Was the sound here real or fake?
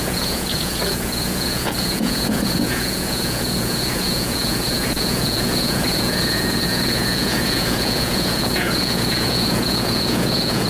fake